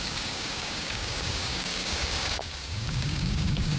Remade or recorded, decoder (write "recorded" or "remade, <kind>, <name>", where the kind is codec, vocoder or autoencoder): remade, codec, DAC